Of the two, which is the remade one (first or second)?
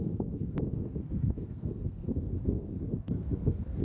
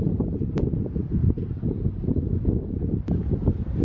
first